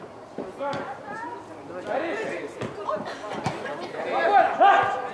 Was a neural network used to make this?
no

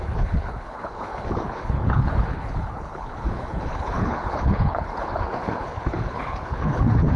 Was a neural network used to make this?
yes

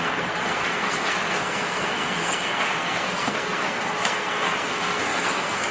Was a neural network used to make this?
yes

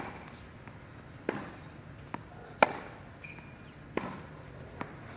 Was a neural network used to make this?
no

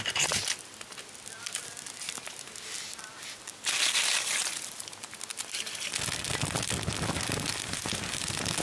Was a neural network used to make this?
no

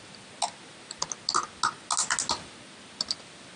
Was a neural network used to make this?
no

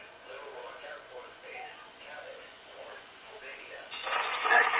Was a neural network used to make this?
yes